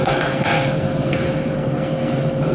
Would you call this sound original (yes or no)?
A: no